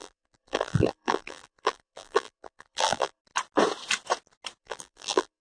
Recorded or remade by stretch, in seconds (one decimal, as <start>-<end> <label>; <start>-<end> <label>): 0.0-3.2 remade; 3.2-4.6 recorded; 4.6-5.4 remade